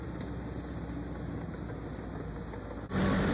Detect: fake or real real